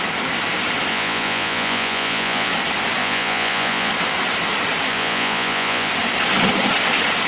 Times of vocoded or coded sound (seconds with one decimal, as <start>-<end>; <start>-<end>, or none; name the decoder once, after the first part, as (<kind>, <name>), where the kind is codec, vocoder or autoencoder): 0.9-2.5 (vocoder, Vocos); 3.0-3.9; 4.9-5.9